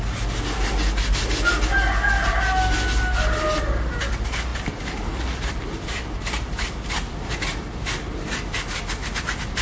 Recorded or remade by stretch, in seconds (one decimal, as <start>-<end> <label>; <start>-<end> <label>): 0.0-9.6 recorded